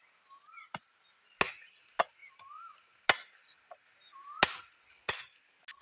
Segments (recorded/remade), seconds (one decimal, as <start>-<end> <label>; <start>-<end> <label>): 0.0-5.8 recorded